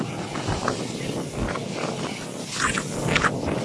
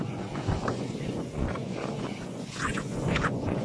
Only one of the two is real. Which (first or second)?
first